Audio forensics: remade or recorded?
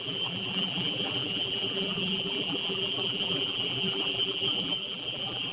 remade